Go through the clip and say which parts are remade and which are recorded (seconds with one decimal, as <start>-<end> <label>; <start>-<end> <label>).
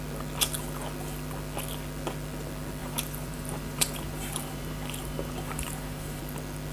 0.0-2.8 recorded; 2.8-6.2 remade; 6.2-6.7 recorded